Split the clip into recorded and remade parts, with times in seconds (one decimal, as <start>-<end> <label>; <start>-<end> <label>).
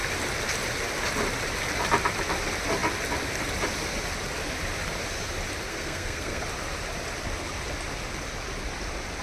0.0-5.7 recorded; 5.7-6.4 remade; 6.4-9.2 recorded